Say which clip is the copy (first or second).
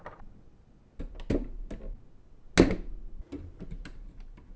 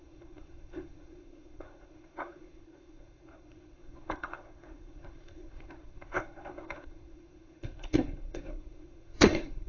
second